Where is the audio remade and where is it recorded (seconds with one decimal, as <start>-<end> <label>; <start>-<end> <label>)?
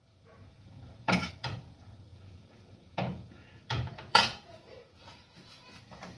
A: 0.0-6.2 remade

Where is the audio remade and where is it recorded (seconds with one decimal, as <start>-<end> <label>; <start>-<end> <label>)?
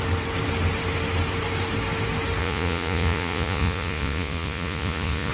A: 0.0-2.4 recorded; 2.4-5.3 remade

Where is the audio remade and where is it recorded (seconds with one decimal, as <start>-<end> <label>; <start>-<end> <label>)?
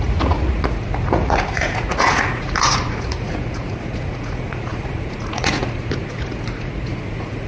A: 0.0-7.5 remade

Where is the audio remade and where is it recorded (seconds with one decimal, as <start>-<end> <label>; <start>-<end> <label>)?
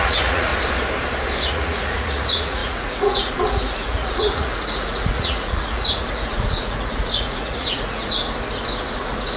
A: 0.0-0.5 remade; 0.5-1.5 recorded; 1.5-8.2 remade; 8.2-9.0 recorded; 9.0-9.4 remade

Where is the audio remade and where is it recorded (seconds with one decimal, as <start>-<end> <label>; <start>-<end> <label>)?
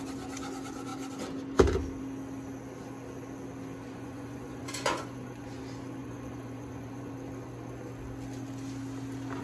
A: 0.0-3.8 recorded; 3.8-5.6 remade; 5.6-6.0 recorded; 6.0-7.1 remade; 7.1-9.4 recorded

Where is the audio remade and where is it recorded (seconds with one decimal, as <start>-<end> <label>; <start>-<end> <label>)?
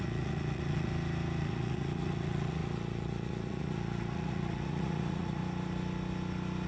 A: 0.0-0.9 remade; 0.9-1.4 recorded; 1.4-5.4 remade; 5.4-6.7 recorded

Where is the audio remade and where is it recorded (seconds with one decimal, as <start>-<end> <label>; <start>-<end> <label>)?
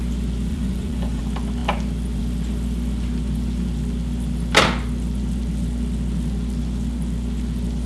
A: 0.0-0.5 recorded; 0.5-1.2 remade; 1.2-7.9 recorded